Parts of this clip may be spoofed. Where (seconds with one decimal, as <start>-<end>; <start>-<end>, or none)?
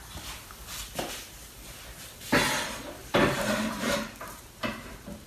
3.0-5.3